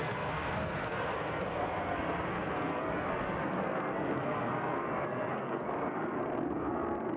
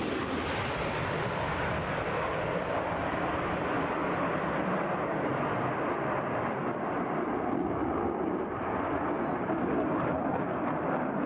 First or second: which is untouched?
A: second